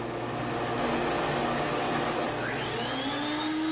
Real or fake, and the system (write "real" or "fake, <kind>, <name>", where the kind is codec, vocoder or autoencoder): real